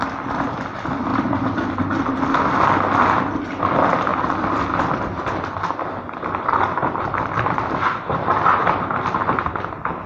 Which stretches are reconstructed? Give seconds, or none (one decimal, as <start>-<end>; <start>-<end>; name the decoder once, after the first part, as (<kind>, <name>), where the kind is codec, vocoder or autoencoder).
1.1-2.2 (vocoder, BigVGAN v2); 4.1-5.2